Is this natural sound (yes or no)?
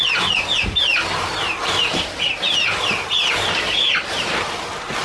yes